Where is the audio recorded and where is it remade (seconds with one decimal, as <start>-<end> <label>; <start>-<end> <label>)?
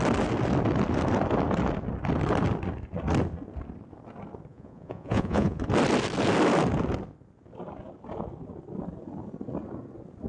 0.0-4.5 recorded; 4.5-5.6 remade; 5.6-10.3 recorded